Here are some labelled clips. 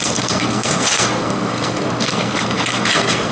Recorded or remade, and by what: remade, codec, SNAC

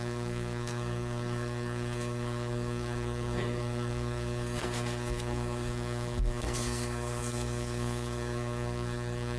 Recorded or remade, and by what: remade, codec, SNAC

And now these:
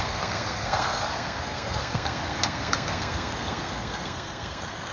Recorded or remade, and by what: remade, codec, SNAC